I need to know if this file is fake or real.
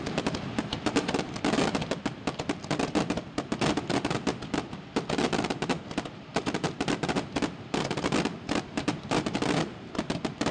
fake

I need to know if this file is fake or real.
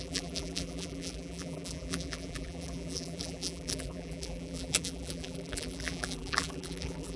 fake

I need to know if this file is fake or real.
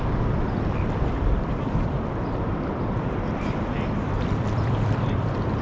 fake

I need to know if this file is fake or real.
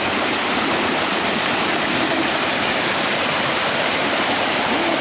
fake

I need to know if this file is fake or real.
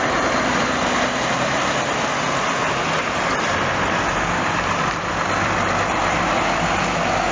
fake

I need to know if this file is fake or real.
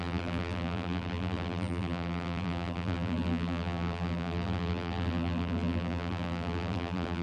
fake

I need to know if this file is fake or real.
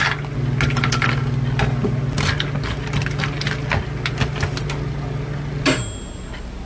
real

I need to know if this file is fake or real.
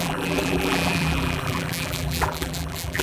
fake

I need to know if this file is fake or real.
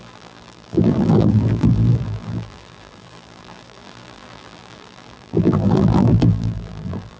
fake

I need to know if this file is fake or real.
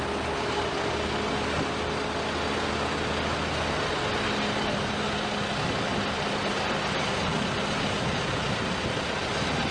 real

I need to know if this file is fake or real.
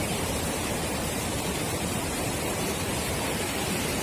fake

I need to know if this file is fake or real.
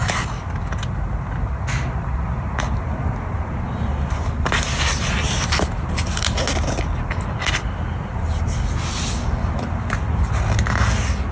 real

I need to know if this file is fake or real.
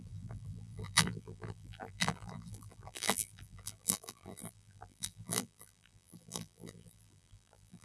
fake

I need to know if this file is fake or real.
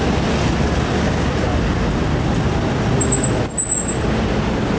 real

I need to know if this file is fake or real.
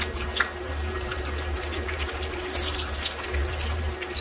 fake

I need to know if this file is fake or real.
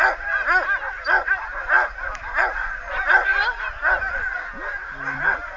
real